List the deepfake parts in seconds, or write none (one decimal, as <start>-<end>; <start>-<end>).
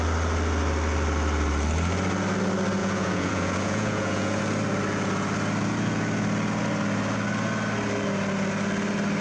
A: 2.8-4.4